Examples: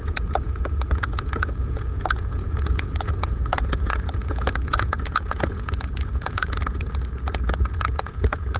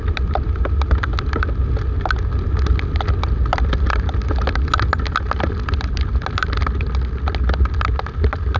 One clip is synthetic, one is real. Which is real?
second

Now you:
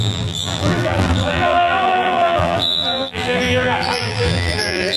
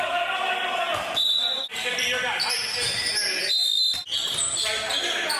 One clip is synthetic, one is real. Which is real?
second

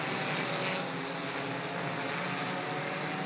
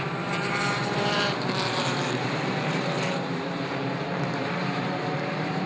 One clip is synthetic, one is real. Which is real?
first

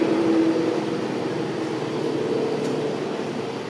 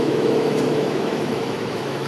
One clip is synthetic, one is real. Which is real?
first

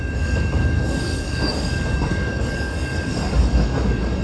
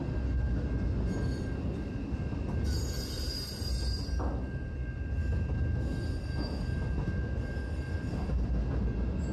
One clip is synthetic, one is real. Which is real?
second